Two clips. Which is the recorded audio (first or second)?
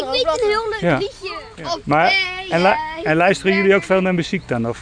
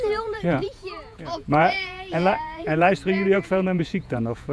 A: first